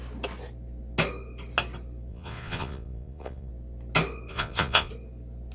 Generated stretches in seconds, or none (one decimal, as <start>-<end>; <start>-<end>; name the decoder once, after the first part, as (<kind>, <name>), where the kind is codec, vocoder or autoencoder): 2.1-3.5 (vocoder, Vocos); 4.3-4.9